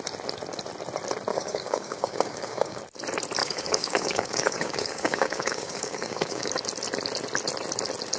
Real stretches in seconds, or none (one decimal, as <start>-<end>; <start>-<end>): 0.0-1.3; 2.8-3.4; 6.5-8.2